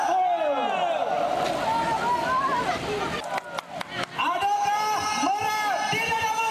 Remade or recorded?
recorded